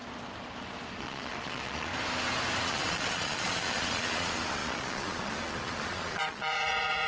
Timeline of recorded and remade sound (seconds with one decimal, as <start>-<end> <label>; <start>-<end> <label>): 0.0-1.0 recorded; 1.0-1.9 remade; 1.9-2.6 recorded; 2.6-7.1 remade